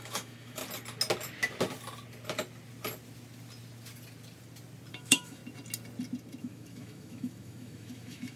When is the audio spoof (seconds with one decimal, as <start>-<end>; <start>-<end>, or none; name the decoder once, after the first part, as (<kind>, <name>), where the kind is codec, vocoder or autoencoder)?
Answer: 0.0-0.6 (autoencoder, DAC-VAE); 4.9-5.4; 6.4-8.4